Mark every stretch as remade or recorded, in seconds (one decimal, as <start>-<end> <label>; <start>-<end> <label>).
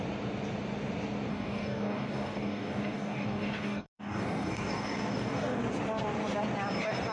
0.0-1.3 recorded; 1.3-5.6 remade; 5.6-7.1 recorded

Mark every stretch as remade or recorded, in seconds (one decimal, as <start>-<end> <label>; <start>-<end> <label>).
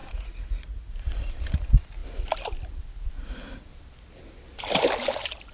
0.0-0.9 remade; 0.9-5.5 recorded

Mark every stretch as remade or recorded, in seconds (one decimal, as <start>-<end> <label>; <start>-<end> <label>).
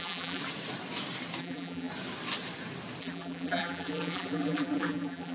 0.0-0.4 remade; 0.4-1.4 recorded; 1.4-1.9 remade; 1.9-3.0 recorded; 3.0-5.3 remade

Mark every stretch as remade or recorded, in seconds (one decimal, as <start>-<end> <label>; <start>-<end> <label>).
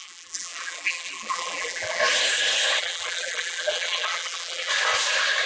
0.0-2.0 remade; 2.0-2.8 recorded; 2.8-4.7 remade; 4.7-5.5 recorded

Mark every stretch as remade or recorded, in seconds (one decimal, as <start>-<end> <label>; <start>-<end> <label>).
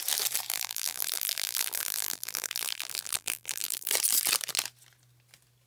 0.0-0.5 recorded; 0.5-3.9 remade; 3.9-5.7 recorded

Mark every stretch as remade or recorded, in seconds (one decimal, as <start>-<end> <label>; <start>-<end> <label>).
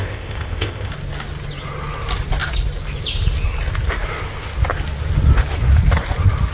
0.0-0.9 remade; 0.9-6.5 recorded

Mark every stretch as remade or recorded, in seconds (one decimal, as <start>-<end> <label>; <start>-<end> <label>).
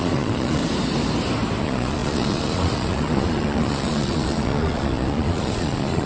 0.0-0.6 remade; 0.6-1.6 recorded; 1.6-6.1 remade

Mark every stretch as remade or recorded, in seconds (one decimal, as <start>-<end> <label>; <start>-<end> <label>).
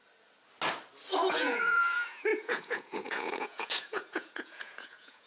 0.0-1.3 recorded; 1.3-5.3 remade